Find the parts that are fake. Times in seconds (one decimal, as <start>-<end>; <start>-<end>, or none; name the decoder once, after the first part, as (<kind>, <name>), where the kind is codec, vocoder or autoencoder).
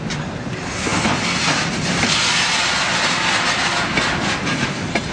none